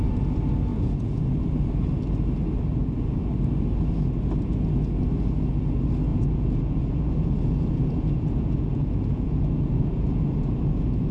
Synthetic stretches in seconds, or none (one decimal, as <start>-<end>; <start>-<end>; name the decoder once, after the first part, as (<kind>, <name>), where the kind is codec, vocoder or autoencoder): 0.7-1.2 (vocoder, Vocos); 2.8-3.3; 6.1-11.1